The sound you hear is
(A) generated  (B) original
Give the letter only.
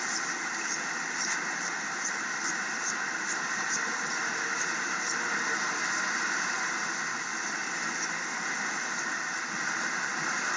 B